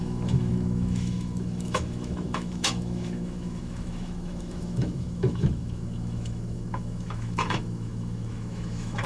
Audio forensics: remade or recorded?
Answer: remade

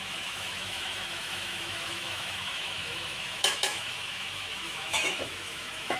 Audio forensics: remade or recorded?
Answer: remade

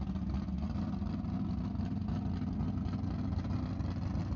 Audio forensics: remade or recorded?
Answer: recorded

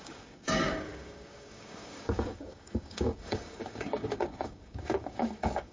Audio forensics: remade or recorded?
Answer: remade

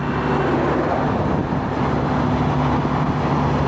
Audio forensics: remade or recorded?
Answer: recorded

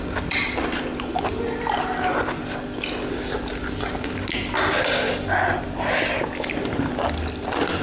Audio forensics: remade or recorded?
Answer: recorded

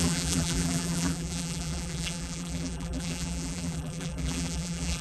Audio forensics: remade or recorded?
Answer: remade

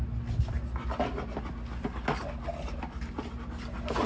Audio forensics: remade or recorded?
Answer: recorded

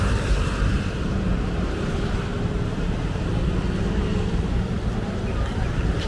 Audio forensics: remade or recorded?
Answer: remade